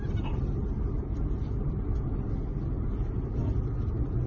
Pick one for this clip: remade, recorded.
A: recorded